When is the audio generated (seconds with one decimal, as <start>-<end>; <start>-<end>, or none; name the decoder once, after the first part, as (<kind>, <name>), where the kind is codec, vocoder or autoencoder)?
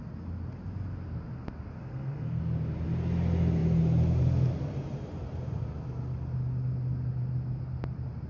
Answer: 1.8-2.4 (codec, SNAC)